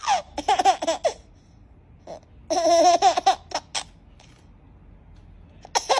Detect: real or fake real